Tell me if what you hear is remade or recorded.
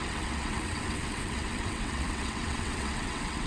remade